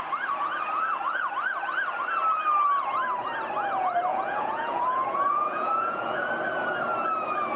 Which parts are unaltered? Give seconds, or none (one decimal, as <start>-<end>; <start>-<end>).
0.0-4.1; 6.3-7.6